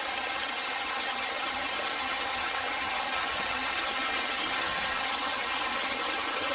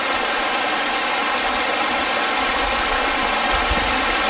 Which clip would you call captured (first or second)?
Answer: second